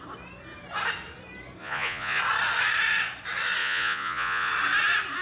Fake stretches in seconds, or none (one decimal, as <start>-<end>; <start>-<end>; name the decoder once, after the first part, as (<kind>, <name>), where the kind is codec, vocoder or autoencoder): 1.6-2.2 (vocoder, Vocos); 3.6-4.5